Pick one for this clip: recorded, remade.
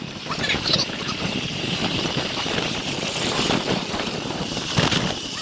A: remade